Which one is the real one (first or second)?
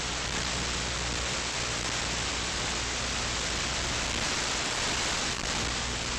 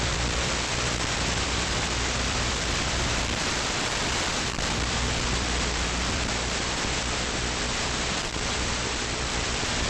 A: first